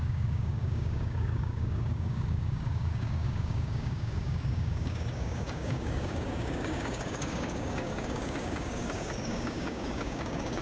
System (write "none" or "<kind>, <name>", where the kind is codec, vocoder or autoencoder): codec, DAC